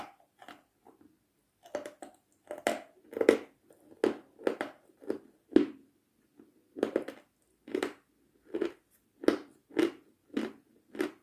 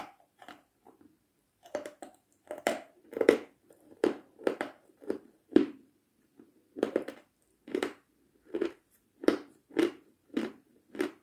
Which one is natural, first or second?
first